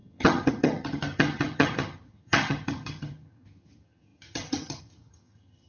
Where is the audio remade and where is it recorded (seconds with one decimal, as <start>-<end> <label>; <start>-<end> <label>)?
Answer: 0.0-5.7 remade